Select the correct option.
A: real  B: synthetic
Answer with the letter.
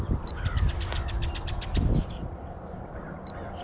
A